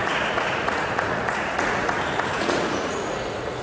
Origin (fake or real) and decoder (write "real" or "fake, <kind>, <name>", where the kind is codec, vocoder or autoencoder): fake, vocoder, Vocos